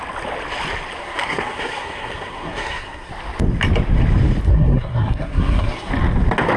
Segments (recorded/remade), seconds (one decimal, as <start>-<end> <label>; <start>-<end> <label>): 0.0-1.0 recorded; 1.0-3.1 remade; 3.1-4.5 recorded; 4.5-5.9 remade; 5.9-6.6 recorded